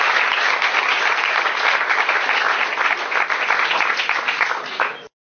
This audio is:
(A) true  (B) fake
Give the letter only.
A